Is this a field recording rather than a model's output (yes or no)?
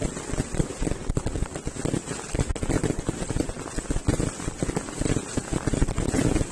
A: yes